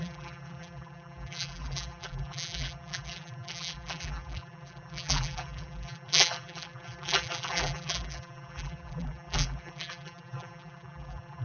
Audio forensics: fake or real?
fake